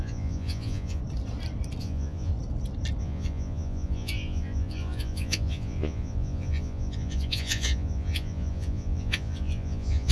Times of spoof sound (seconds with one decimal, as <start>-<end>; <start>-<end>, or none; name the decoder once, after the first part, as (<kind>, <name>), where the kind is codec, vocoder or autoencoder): 0.0-1.0 (vocoder, Vocos); 1.8-2.3; 3.0-10.1